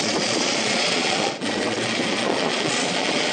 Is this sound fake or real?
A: fake